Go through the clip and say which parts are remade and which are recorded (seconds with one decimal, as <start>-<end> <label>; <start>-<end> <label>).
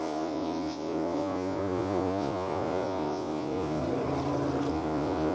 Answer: 0.0-3.8 remade; 3.8-4.7 recorded; 4.7-5.3 remade